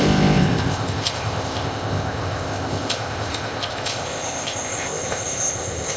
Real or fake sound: fake